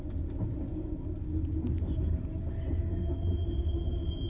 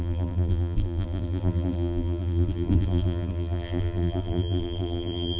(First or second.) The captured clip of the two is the first